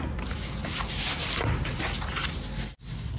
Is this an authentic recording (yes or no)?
yes